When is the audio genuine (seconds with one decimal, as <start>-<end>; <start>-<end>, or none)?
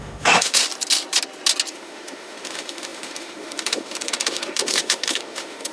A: 0.6-1.7